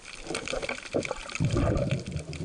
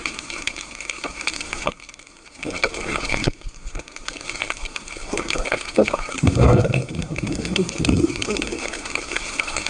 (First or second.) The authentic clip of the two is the first